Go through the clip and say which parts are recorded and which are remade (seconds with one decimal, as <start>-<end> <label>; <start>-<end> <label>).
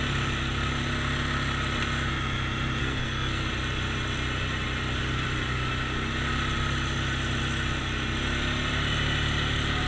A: 0.0-2.8 recorded; 2.8-3.5 remade; 3.5-9.9 recorded